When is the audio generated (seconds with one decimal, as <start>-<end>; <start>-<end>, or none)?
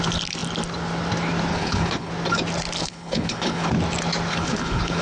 1.5-2.1; 2.8-3.7; 4.3-5.0